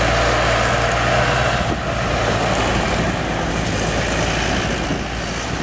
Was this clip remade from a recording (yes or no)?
no